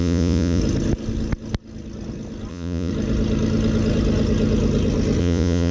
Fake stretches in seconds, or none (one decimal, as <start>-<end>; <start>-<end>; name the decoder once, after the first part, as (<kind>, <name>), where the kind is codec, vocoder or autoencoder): 0.0-0.6 (vocoder, Vocos); 2.5-2.9; 5.2-5.7